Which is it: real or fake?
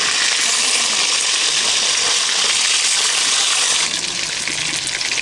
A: real